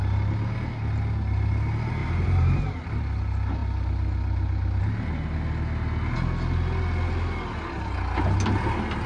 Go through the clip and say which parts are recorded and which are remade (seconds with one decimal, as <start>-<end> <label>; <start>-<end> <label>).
0.0-2.0 recorded; 2.0-3.0 remade; 3.0-9.1 recorded